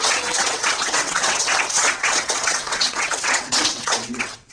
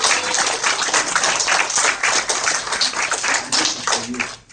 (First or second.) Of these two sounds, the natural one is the second